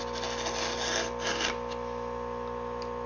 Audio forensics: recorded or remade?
recorded